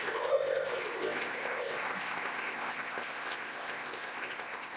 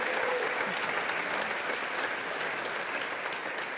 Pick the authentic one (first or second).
second